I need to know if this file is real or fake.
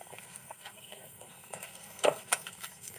fake